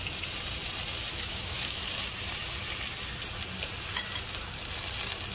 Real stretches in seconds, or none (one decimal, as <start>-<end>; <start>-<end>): 0.0-1.1; 1.8-5.3